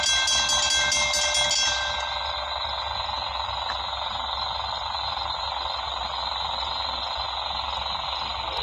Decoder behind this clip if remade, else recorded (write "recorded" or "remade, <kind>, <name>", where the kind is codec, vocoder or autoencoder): recorded